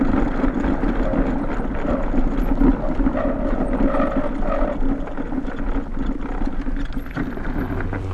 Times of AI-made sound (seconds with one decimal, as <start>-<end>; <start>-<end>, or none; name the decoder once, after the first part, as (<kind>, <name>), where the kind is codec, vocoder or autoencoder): 0.0-1.1 (vocoder, BigVGAN v2); 1.6-2.7; 7.2-8.1